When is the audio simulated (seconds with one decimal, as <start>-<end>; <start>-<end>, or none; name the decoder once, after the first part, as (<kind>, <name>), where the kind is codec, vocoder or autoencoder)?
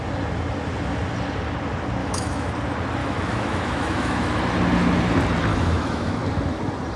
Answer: 2.0-2.5 (autoencoder, DAC-VAE); 3.0-4.4; 5.5-6.2